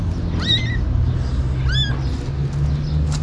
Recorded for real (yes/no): yes